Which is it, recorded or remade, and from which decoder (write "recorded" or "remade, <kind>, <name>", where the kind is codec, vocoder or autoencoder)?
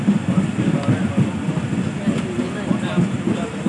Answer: recorded